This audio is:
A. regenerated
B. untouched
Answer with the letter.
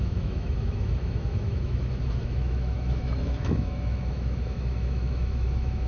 A